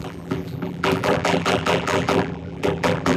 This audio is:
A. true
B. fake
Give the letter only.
B